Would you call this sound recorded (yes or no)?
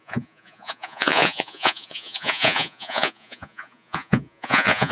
no